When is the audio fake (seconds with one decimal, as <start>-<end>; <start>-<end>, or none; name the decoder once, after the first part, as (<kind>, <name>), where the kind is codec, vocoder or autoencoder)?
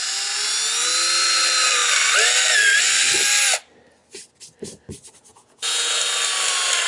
5.3-6.0 (vocoder, Vocos)